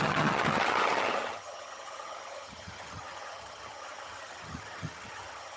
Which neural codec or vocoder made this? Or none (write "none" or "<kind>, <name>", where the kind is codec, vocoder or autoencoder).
vocoder, HiFi-GAN